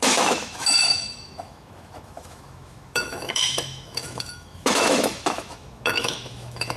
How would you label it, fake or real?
fake